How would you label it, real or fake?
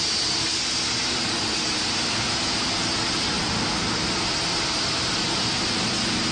real